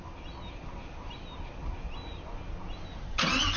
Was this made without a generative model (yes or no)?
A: yes